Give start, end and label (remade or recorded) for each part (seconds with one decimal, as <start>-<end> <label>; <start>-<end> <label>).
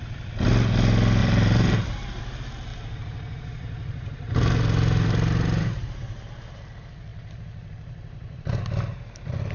0.0-1.2 recorded; 1.2-2.2 remade; 2.2-2.7 recorded; 2.7-6.6 remade; 6.6-7.1 recorded; 7.1-8.6 remade; 8.6-9.5 recorded